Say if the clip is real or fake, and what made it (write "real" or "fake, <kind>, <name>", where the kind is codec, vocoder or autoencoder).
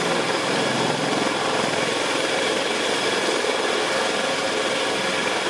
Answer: real